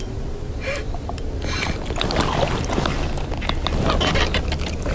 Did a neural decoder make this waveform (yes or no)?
no